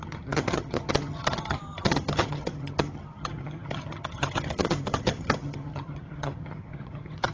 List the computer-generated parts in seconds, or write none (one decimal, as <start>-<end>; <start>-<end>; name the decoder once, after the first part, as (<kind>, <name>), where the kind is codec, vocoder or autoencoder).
0.0-7.3 (vocoder, HiFi-GAN)